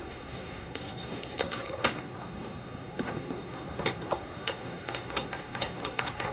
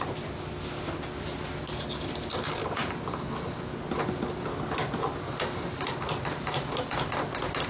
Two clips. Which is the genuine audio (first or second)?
second